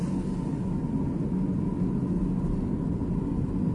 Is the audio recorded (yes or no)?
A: yes